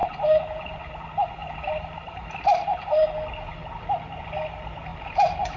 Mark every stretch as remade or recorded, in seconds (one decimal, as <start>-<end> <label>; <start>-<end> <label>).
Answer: 0.0-0.9 remade; 0.9-1.4 recorded; 1.4-3.0 remade; 3.0-4.9 recorded; 4.9-5.6 remade